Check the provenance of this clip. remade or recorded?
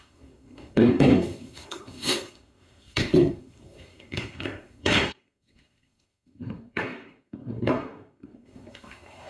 remade